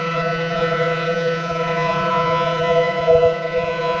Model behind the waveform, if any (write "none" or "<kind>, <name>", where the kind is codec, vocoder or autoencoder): vocoder, Vocos